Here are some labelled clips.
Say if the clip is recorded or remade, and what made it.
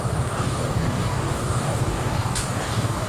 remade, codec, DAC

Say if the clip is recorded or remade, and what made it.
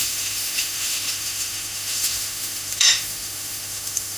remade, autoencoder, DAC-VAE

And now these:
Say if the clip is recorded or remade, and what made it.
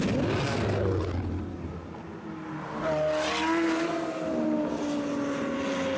recorded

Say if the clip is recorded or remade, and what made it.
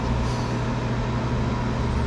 recorded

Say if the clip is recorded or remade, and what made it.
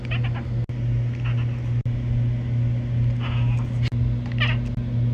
recorded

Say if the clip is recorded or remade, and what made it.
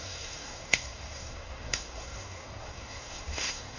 remade, codec, SNAC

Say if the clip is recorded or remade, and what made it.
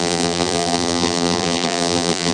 remade, vocoder, BigVGAN v2